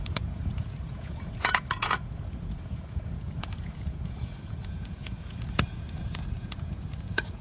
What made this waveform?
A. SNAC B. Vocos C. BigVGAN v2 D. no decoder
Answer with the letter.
B